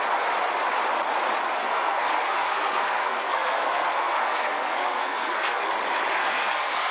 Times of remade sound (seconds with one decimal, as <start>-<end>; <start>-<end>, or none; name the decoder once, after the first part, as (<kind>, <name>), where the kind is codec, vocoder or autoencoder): 1.6-5.7 (codec, SNAC); 6.2-6.9